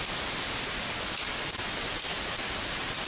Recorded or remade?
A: recorded